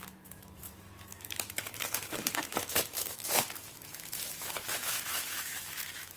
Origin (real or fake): fake